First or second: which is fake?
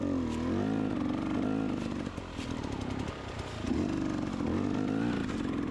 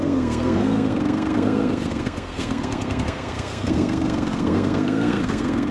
second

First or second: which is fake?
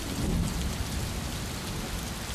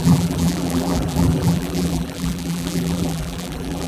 second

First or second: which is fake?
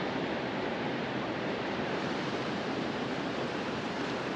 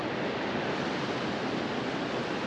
first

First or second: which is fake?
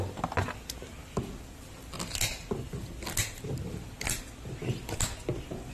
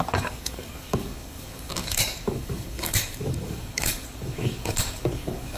second